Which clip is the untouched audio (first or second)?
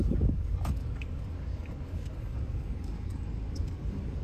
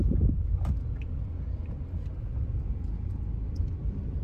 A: second